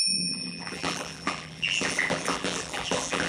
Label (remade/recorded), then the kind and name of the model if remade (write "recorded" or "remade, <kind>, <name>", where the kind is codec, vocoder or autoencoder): remade, vocoder, BigVGAN v2